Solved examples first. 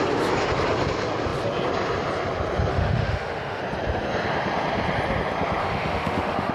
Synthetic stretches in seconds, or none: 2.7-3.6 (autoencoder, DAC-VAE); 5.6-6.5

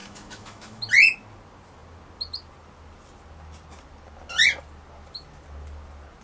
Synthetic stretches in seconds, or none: 0.0-0.8 (autoencoder, DAC-VAE)

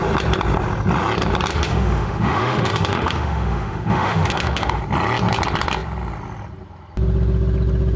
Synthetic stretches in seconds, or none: 1.5-4.8 (autoencoder, DAC-VAE)

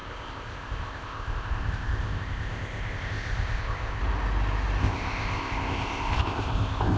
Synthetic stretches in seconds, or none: 0.0-4.0 (codec, ZipCodec); 4.8-7.0

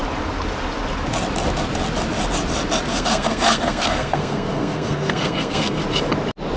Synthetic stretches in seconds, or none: 2.9-5.8 (codec, SNAC)

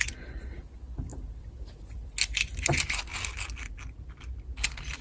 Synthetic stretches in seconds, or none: 3.1-4.2 (vocoder, BigVGAN v2)

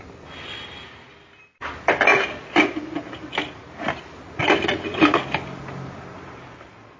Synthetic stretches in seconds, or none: none

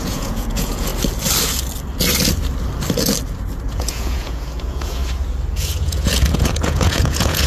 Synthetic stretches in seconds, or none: 0.0-0.9 (vocoder, Vocos); 3.6-5.0; 5.5-7.5